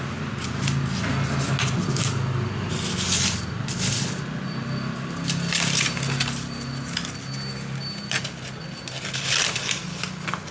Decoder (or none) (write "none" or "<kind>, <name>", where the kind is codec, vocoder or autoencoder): none